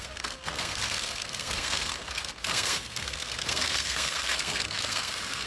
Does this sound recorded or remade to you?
remade